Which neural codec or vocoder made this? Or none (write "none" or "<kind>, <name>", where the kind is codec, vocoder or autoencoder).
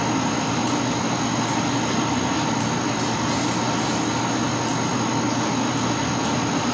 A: none